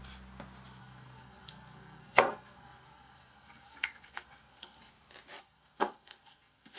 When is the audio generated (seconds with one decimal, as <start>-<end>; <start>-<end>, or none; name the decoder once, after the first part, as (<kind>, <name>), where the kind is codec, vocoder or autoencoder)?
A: 0.8-4.9 (codec, SNAC); 5.4-6.8